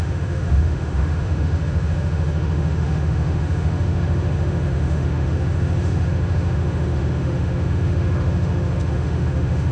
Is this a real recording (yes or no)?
no